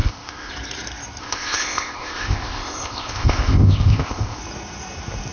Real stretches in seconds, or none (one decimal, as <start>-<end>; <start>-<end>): 0.5-1.2; 4.4-5.3